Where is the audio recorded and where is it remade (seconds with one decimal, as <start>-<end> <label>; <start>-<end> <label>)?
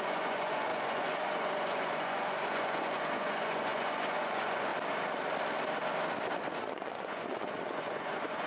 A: 0.0-4.7 remade; 4.7-6.5 recorded; 6.5-8.5 remade